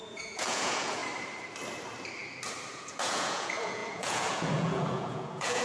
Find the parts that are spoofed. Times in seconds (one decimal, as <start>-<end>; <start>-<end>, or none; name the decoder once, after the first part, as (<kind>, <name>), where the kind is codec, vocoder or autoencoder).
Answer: 0.0-1.0 (vocoder, Vocos); 2.7-5.6